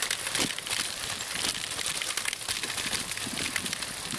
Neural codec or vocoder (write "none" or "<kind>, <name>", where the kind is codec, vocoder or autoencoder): none